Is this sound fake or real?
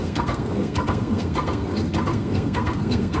fake